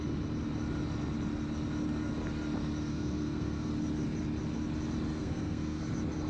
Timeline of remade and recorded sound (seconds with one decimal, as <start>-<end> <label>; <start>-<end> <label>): 0.0-2.9 recorded; 2.9-3.7 remade; 3.7-5.2 recorded; 5.2-5.8 remade; 5.8-6.3 recorded